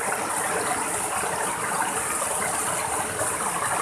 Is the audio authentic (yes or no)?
yes